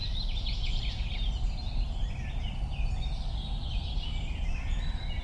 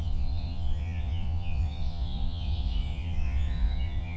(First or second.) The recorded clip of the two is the first